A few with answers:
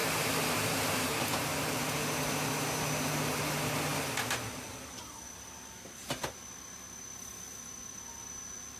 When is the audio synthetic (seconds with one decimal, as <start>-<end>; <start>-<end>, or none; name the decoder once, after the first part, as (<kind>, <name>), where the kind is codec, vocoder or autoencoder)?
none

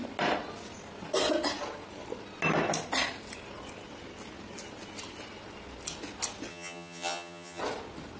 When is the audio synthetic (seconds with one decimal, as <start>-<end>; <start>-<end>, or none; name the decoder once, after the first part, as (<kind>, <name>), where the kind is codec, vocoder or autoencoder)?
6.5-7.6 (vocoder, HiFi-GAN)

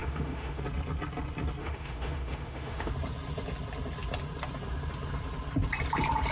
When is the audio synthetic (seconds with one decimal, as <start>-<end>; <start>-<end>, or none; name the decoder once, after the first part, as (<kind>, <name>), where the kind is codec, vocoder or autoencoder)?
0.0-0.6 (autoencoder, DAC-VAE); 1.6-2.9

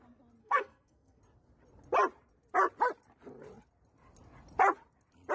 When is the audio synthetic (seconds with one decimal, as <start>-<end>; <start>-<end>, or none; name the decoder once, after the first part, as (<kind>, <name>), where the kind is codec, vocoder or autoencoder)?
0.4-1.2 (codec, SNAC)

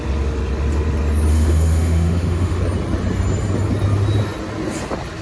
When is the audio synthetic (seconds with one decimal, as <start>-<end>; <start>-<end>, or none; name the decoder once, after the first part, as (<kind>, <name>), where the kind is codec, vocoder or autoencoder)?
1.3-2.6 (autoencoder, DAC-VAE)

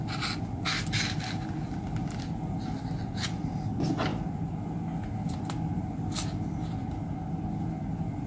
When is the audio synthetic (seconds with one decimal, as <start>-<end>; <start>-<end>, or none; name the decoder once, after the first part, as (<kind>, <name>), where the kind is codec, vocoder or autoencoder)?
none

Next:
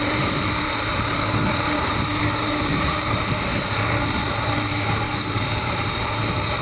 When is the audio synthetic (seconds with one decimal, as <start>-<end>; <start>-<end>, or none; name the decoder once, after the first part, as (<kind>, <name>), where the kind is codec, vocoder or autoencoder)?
0.0-6.6 (vocoder, BigVGAN v2)